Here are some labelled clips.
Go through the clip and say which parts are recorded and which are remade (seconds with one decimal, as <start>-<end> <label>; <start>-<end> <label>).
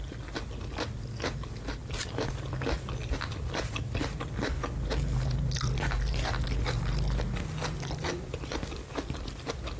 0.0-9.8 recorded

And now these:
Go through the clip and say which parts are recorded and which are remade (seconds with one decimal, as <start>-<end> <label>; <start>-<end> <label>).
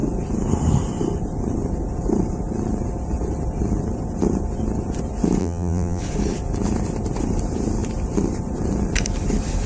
0.0-5.4 recorded; 5.4-6.0 remade; 6.0-9.7 recorded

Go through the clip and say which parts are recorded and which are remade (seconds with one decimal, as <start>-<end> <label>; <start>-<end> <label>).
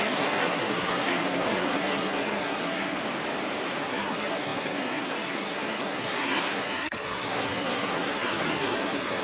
0.0-3.0 remade; 3.0-3.8 recorded; 3.8-9.2 remade